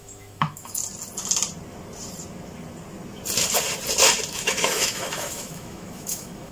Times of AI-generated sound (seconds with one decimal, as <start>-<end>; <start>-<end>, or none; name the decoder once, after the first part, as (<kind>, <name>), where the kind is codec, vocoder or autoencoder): 0.0-0.8 (autoencoder, DAC-VAE); 4.3-6.5